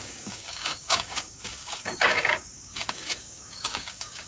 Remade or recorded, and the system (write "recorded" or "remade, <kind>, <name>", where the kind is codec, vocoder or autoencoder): remade, codec, DAC